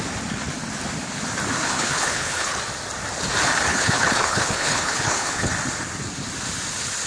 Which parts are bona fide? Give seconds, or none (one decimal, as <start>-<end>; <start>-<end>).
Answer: 0.0-1.5; 2.6-3.7; 5.5-7.1